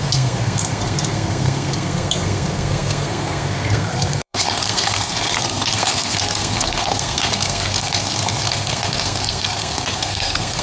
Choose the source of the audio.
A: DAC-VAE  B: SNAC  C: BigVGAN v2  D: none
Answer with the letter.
B